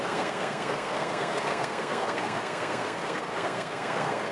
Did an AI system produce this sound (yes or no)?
yes